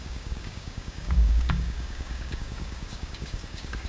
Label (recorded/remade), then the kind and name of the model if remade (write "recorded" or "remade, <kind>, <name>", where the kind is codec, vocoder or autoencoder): remade, codec, DAC